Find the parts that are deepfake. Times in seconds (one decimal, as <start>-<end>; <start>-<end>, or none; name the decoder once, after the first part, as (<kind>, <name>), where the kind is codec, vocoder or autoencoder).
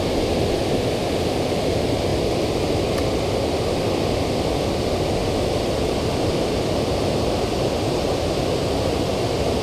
none